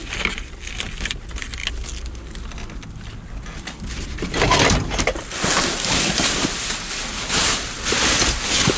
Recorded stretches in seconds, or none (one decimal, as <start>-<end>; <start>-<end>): 0.0-8.8